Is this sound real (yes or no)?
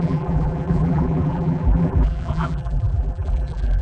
no